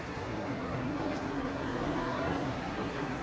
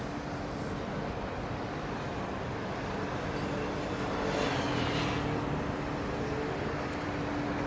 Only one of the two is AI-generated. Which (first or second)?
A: first